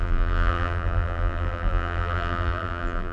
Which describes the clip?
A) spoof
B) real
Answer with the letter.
A